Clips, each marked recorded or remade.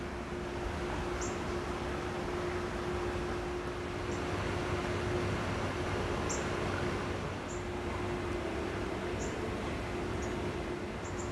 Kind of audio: recorded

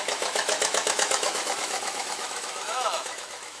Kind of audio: remade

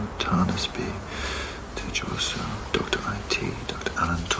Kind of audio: recorded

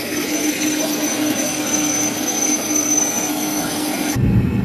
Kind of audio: remade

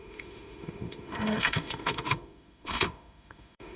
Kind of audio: remade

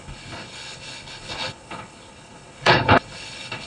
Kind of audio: remade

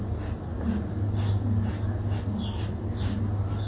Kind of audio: recorded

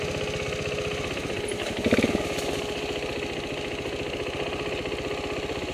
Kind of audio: recorded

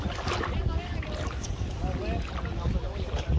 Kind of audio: recorded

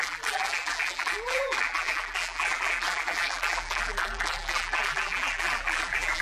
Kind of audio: remade